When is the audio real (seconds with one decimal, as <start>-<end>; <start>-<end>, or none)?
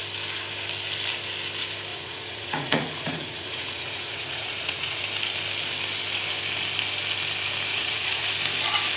0.0-1.9; 5.0-7.7; 8.3-9.0